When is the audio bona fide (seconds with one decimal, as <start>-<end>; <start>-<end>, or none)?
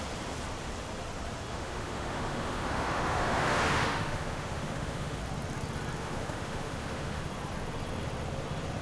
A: 0.0-1.5; 5.2-6.0; 7.2-8.8